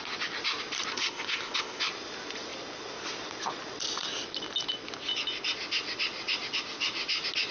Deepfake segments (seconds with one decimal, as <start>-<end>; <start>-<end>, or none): 0.9-1.8